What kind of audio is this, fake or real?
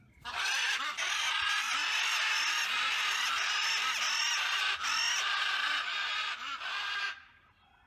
real